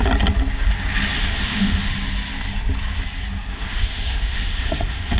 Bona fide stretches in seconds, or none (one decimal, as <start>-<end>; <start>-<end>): 0.0-1.2; 1.9-3.5